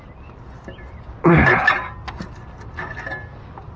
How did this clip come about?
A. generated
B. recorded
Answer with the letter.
B